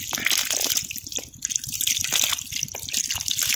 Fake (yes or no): no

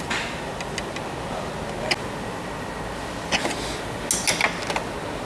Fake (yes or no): no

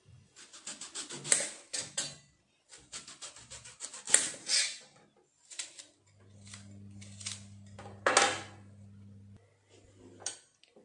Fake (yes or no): no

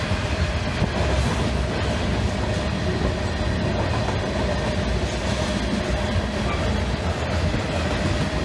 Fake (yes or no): no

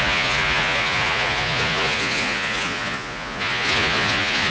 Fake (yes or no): yes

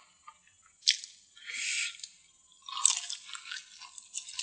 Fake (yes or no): no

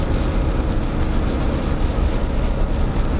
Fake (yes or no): no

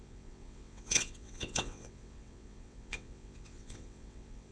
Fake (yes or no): yes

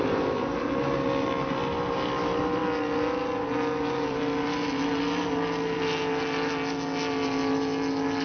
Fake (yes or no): no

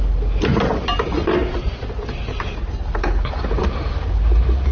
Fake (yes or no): no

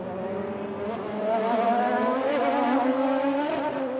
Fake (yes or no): no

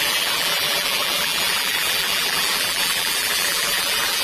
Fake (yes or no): yes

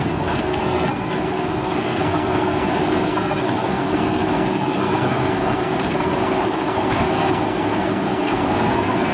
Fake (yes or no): yes